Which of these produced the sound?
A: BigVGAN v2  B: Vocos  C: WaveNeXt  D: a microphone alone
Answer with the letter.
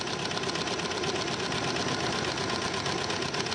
D